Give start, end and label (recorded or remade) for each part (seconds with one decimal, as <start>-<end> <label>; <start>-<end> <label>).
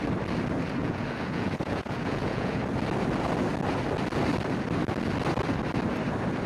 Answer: 0.0-0.8 recorded; 0.8-2.6 remade; 2.6-6.5 recorded